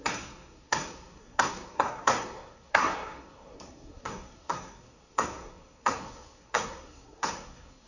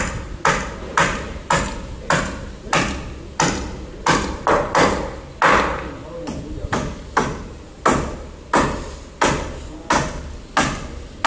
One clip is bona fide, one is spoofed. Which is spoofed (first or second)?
first